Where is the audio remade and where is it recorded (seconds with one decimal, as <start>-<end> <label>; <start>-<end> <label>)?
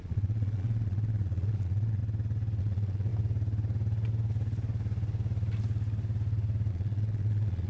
0.0-2.0 remade; 2.0-2.6 recorded; 2.6-3.1 remade; 3.1-6.7 recorded; 6.7-7.7 remade